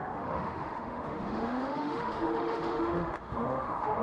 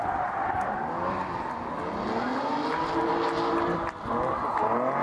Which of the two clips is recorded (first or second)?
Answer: second